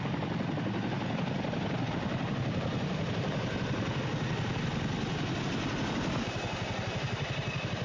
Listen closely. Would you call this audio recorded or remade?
recorded